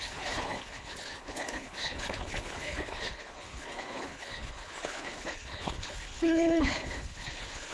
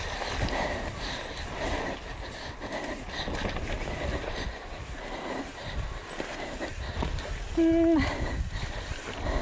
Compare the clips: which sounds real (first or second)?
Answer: second